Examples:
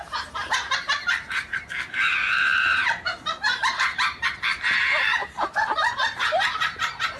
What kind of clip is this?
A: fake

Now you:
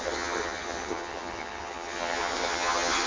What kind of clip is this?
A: fake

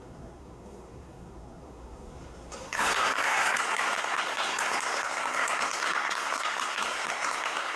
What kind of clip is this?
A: fake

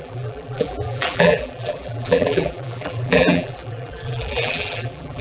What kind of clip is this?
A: fake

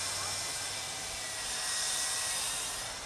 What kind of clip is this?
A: real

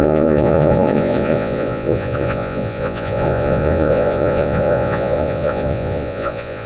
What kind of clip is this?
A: fake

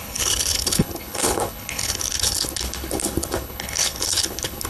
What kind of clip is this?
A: fake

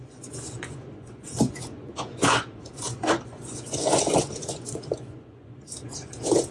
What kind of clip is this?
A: fake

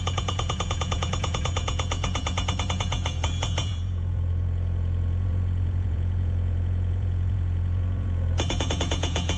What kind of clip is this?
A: fake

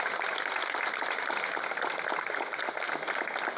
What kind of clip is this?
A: real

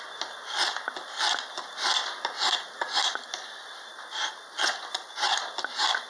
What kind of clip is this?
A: real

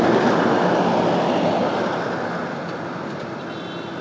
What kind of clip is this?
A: real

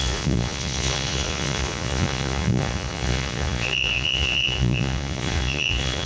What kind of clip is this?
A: fake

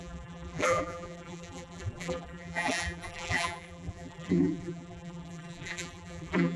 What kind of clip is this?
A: fake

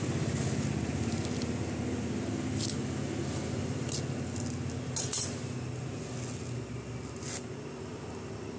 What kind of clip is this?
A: real